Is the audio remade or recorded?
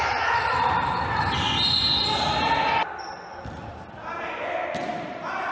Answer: recorded